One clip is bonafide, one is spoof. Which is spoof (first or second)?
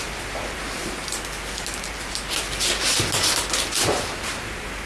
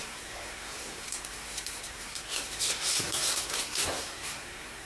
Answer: second